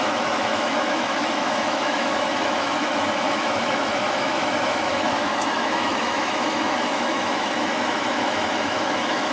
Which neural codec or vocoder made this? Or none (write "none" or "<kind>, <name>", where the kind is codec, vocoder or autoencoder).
autoencoder, DAC-VAE